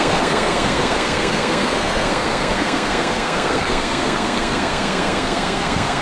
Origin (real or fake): fake